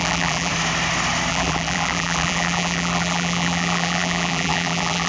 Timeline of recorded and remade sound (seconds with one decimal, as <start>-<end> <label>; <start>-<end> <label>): 0.0-0.5 remade; 0.5-1.3 recorded; 1.3-5.1 remade